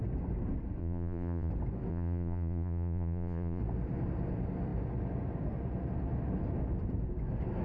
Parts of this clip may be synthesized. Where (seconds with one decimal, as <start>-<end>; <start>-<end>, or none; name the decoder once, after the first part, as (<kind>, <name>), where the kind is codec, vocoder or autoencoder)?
0.8-1.5 (vocoder, Vocos); 1.9-3.6